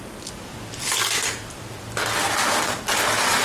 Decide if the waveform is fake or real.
real